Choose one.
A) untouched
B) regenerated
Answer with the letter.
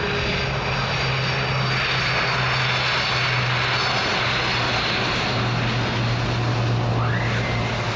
A